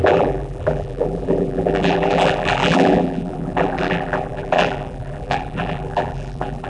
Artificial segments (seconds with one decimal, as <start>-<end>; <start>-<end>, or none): 0.0-6.7